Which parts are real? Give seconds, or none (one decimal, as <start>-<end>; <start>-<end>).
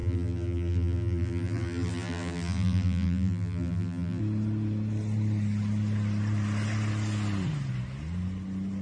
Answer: 4.2-8.8